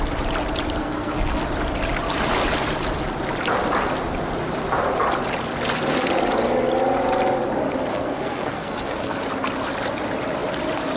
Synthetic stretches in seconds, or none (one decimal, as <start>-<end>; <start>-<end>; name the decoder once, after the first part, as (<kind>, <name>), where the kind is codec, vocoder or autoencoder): 0.8-1.4 (codec, SNAC); 7.9-9.2